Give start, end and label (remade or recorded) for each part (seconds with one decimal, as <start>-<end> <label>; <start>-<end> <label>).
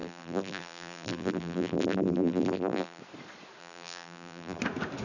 0.0-3.0 remade; 3.0-3.6 recorded; 3.6-4.6 remade; 4.6-5.0 recorded